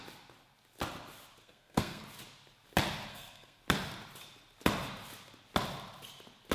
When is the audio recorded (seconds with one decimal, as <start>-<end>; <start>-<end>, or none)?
0.0-1.4; 2.0-3.1; 3.6-6.5

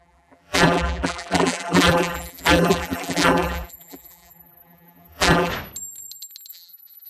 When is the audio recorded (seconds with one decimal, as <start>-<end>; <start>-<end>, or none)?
5.5-6.5

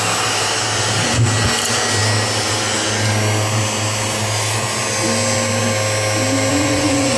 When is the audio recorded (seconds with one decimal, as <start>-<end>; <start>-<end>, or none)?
0.0-6.5

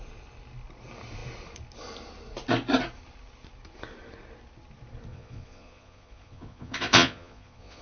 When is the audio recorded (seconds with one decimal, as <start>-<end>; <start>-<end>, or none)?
0.0-5.1

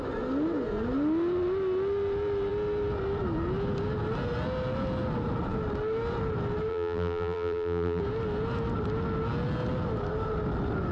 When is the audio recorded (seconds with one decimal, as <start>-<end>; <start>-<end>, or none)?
0.0-6.7; 8.0-10.9

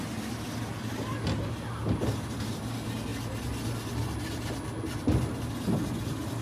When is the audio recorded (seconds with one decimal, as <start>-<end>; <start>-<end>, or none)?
0.0-6.4